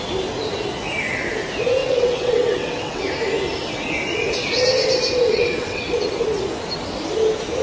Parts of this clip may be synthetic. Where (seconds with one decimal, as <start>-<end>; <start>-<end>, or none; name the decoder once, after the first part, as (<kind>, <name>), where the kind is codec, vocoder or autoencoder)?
1.8-3.1 (vocoder, WaveNeXt); 5.3-6.1